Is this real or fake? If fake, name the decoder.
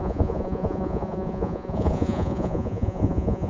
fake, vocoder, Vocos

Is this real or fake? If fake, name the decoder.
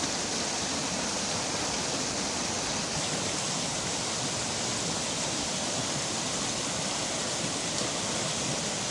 real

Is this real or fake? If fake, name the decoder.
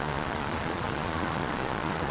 fake, vocoder, Vocos